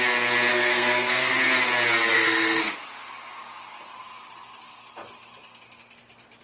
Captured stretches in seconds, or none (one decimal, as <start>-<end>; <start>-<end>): 0.0-0.5; 1.3-2.1; 2.6-6.4